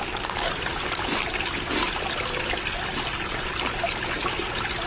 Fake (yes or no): no